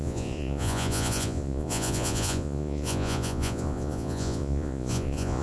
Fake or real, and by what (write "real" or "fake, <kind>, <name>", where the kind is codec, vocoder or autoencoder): fake, vocoder, Vocos